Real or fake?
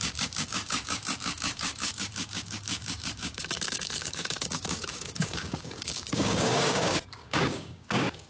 fake